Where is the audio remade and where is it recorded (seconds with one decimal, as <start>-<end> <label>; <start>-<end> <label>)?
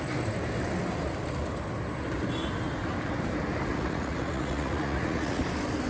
0.0-3.7 recorded; 3.7-5.4 remade; 5.4-5.9 recorded